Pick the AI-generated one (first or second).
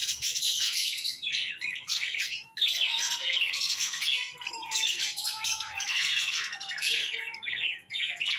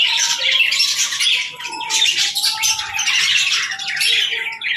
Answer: first